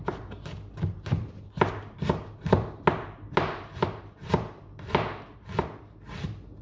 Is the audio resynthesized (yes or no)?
no